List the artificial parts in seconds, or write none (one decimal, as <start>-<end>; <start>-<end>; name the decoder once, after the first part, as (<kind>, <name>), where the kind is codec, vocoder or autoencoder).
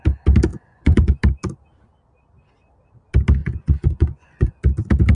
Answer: 0.5-1.1 (vocoder, Vocos); 3.4-4.5